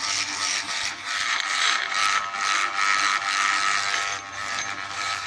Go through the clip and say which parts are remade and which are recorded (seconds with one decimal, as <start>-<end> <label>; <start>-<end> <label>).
0.0-2.0 remade; 2.0-4.3 recorded; 4.3-5.3 remade